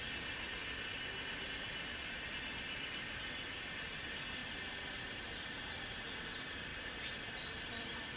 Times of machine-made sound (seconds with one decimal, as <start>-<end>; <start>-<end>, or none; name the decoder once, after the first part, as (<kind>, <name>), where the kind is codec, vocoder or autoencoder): none